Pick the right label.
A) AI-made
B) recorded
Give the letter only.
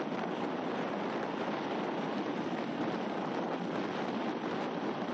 B